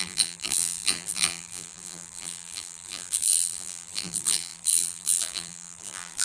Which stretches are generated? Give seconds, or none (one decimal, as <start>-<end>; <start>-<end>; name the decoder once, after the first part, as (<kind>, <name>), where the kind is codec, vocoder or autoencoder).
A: 0.0-6.2 (vocoder, BigVGAN v2)